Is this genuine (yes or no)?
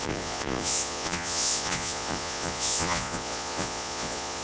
no